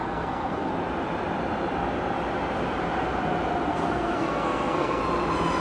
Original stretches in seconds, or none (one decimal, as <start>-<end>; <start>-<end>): 0.7-3.7; 5.0-5.6